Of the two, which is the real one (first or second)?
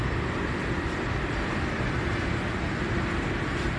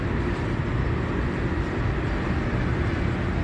second